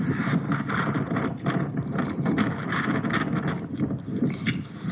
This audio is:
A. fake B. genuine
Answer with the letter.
B